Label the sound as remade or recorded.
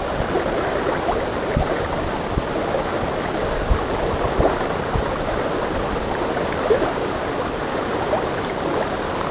recorded